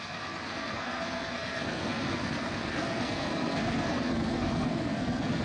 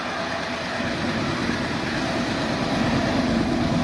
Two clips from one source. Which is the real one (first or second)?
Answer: second